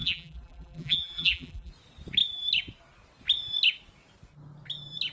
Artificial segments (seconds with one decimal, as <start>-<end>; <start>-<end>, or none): 0.0-1.7